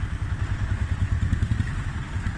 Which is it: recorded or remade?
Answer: recorded